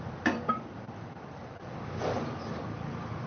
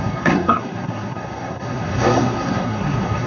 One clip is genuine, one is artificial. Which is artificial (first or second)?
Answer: second